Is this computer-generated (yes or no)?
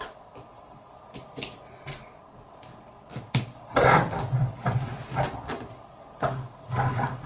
yes